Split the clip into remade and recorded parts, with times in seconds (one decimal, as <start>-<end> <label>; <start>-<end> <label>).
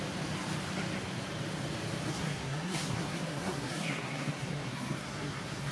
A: 0.0-2.1 recorded; 2.1-5.7 remade